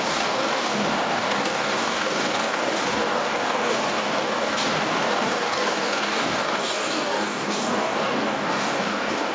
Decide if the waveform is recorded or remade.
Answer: remade